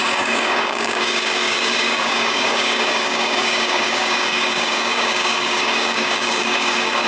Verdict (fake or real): fake